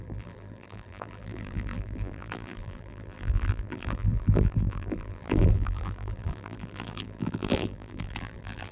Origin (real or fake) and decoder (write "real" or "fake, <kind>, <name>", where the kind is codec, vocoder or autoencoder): fake, vocoder, BigVGAN v2